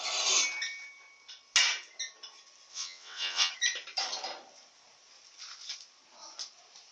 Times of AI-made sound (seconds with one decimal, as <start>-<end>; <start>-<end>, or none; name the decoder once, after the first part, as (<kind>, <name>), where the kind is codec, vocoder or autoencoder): 2.7-3.5 (vocoder, WaveNeXt)